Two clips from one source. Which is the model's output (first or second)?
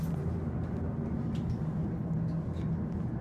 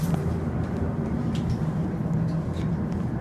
second